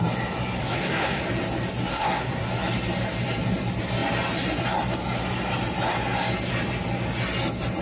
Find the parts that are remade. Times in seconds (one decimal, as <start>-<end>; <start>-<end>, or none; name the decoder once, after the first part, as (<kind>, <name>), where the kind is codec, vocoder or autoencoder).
0.6-1.2 (codec, SNAC); 1.9-2.5